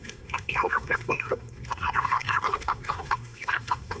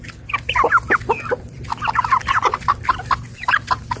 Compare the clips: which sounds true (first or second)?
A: second